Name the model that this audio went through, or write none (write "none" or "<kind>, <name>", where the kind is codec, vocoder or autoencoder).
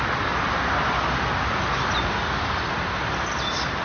none